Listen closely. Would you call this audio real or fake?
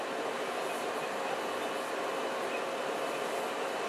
real